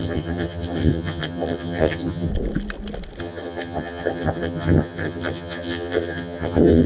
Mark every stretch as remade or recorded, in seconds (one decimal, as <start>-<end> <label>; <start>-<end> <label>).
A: 0.0-2.3 remade; 2.3-3.2 recorded; 3.2-6.9 remade